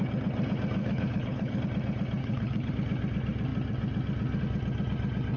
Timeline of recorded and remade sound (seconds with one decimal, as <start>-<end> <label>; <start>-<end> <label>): 0.0-0.8 recorded; 0.8-1.6 remade; 1.6-2.2 recorded; 2.2-2.7 remade; 2.7-5.4 recorded